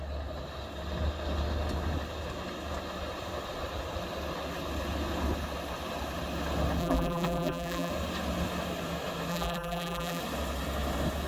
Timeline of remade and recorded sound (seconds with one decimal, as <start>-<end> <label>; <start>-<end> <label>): 0.0-6.8 recorded; 6.8-7.9 remade; 7.9-9.3 recorded; 9.3-10.2 remade; 10.2-11.3 recorded